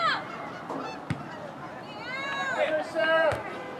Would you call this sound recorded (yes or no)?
yes